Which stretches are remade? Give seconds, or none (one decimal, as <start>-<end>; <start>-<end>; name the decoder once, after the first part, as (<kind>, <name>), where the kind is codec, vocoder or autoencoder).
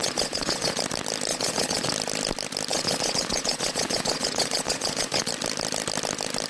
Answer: 0.0-0.8 (vocoder, Vocos); 1.3-1.9; 2.7-5.3